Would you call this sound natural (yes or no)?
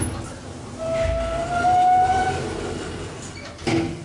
yes